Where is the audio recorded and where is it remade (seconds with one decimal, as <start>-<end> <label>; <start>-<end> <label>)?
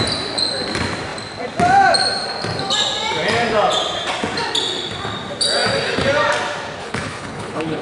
0.0-6.8 recorded; 6.8-7.8 remade